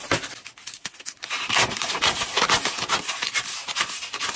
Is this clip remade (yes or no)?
no